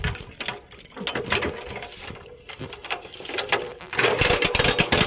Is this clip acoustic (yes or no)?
yes